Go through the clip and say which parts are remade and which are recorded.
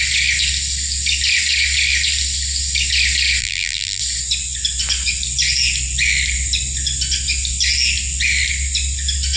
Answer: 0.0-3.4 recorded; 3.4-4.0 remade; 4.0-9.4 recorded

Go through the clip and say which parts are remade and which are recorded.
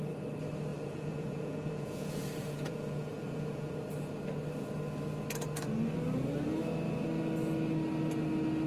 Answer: 0.0-0.7 recorded; 0.7-3.7 remade; 3.7-8.7 recorded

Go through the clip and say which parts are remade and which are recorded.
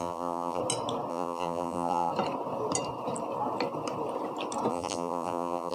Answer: 0.0-0.6 remade; 0.6-1.1 recorded; 1.1-2.1 remade; 2.1-4.7 recorded; 4.7-5.7 remade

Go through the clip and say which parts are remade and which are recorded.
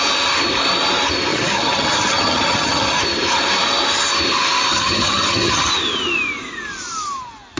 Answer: 0.0-1.3 recorded; 1.3-3.0 remade; 3.0-4.7 recorded; 4.7-5.7 remade; 5.7-7.6 recorded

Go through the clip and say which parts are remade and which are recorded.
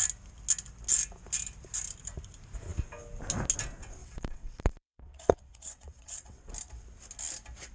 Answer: 0.0-4.0 recorded; 4.0-6.5 remade; 6.5-7.7 recorded